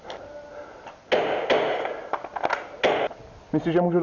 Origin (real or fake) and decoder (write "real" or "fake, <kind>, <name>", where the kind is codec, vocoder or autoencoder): real